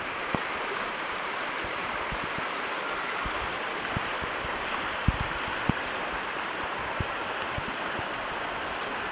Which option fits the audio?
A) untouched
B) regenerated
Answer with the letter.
A